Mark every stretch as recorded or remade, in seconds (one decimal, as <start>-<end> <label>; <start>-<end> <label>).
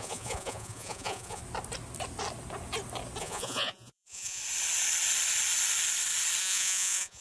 0.0-1.4 remade; 1.4-3.2 recorded; 3.2-4.4 remade; 4.4-6.4 recorded; 6.4-7.2 remade